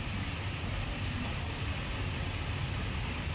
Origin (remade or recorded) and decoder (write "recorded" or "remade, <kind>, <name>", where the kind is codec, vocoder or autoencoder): recorded